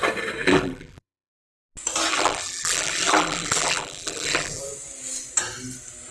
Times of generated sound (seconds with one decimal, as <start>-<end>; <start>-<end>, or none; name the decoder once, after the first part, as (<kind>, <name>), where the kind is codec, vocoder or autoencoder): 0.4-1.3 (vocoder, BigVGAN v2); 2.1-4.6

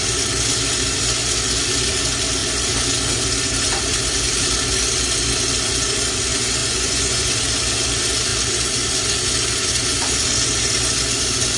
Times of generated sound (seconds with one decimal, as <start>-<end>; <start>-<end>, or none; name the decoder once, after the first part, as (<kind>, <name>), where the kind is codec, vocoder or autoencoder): 6.6-7.3 (vocoder, Vocos)

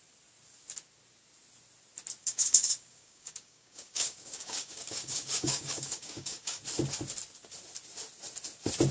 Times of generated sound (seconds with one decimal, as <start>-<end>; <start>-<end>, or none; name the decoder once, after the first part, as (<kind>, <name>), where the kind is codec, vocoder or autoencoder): 2.2-6.6 (codec, DAC)

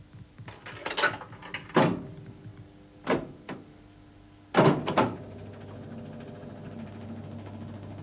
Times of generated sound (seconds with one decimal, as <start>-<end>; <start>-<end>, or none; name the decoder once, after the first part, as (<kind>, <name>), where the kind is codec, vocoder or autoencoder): none

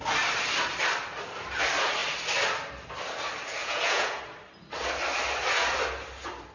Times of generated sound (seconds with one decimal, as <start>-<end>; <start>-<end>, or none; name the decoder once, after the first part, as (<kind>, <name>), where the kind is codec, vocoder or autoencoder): 3.6-4.2 (vocoder, Vocos)